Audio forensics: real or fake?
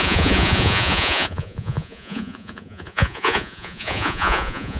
fake